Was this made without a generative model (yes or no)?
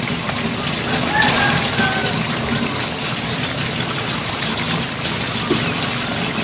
yes